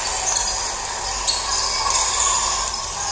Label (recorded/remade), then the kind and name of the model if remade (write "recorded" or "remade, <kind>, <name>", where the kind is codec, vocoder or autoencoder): recorded